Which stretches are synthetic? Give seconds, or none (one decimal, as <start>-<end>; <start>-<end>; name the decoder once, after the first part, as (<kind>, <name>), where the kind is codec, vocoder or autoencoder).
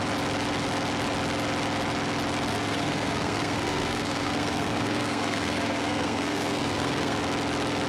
2.5-7.2 (codec, SNAC)